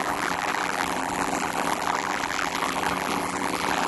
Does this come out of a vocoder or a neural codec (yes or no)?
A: yes